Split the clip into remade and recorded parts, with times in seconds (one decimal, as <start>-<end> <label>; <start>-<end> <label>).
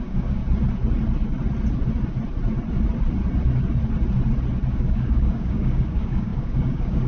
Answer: 0.0-0.4 remade; 0.4-4.7 recorded; 4.7-7.1 remade